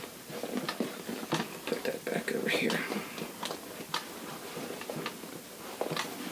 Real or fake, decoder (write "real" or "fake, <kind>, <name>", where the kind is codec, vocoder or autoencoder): real